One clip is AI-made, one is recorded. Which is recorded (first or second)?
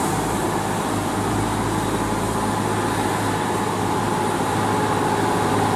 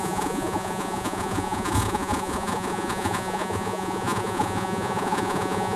first